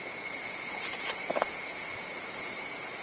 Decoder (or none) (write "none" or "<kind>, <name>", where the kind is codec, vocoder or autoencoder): vocoder, Vocos